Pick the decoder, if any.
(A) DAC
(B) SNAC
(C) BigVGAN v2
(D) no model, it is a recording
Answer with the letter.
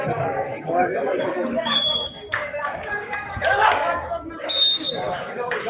A